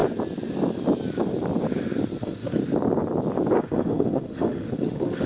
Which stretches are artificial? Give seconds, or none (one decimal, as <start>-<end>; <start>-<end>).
2.2-2.6; 3.6-5.3